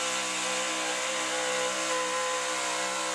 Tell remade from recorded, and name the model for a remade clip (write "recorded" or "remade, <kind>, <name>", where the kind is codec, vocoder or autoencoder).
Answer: recorded